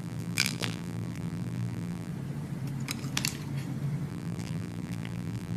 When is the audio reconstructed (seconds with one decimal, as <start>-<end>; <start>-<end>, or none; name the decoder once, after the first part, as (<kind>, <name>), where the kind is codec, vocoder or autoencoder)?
0.0-2.1 (vocoder, BigVGAN v2); 4.1-5.6